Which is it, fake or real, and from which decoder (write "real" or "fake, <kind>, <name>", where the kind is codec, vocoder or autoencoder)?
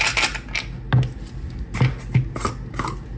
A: real